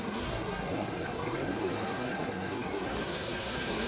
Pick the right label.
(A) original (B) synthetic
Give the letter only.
B